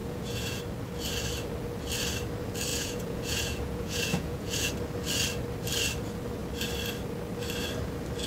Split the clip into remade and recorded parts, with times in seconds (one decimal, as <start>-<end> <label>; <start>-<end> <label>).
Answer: 0.0-0.6 remade; 0.6-2.7 recorded; 2.7-4.7 remade; 4.7-8.3 recorded

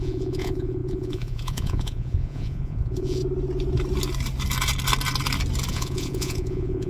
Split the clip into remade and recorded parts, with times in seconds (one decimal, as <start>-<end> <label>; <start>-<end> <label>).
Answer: 0.0-3.2 remade; 3.2-5.7 recorded; 5.7-6.9 remade